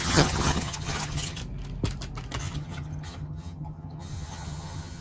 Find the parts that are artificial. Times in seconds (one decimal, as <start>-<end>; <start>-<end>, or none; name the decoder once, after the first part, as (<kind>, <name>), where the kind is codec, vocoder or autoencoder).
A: 0.0-1.4 (vocoder, HiFi-GAN); 2.4-5.0